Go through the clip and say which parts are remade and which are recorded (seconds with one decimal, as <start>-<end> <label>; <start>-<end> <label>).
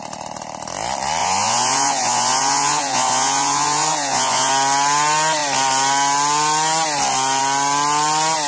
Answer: 0.0-1.2 recorded; 1.2-4.5 remade; 4.5-8.5 recorded